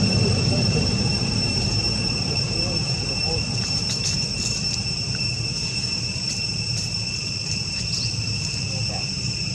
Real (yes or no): no